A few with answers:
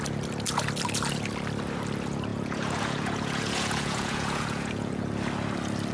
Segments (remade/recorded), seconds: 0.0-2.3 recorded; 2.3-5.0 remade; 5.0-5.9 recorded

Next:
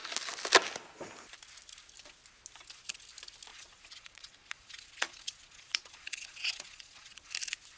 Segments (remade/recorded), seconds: 0.0-3.5 recorded; 3.5-7.3 remade; 7.3-7.8 recorded

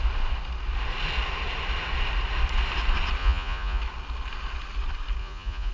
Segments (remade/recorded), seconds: 0.0-3.2 recorded; 3.2-3.8 remade; 3.8-5.2 recorded; 5.2-5.7 remade

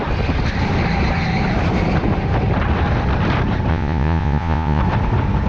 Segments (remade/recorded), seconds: 0.0-3.7 recorded; 3.7-4.8 remade; 4.8-5.5 recorded

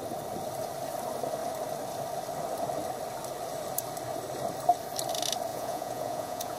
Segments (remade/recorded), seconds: 0.0-5.5 recorded; 5.5-6.6 remade